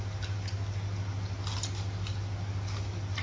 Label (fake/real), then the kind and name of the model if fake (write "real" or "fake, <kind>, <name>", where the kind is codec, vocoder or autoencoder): real